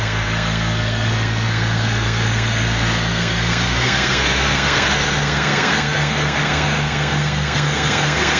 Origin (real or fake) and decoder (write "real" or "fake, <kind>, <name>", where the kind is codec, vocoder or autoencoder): fake, codec, SNAC